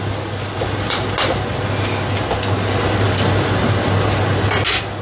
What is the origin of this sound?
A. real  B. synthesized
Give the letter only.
A